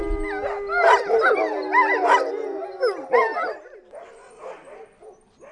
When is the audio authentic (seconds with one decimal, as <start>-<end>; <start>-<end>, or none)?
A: 0.0-5.5